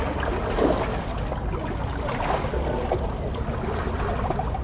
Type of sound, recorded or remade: recorded